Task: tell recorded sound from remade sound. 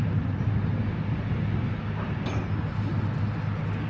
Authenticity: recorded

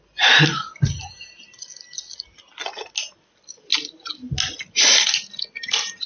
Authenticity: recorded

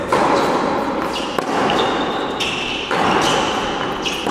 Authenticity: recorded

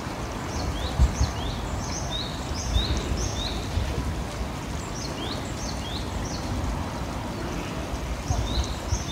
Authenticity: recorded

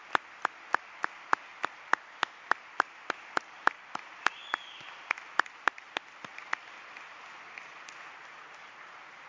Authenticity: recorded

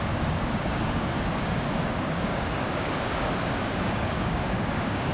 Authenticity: remade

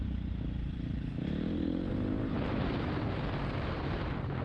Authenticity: remade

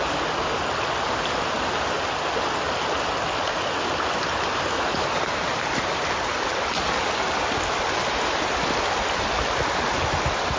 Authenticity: recorded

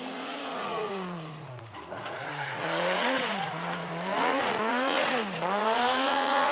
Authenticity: remade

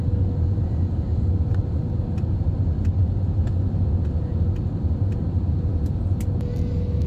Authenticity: recorded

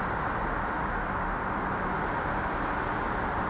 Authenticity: recorded